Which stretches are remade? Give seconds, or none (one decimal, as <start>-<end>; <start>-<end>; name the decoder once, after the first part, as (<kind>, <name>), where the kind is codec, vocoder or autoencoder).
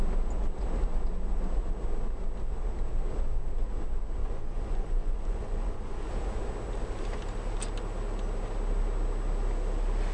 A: 4.2-6.1 (vocoder, Vocos)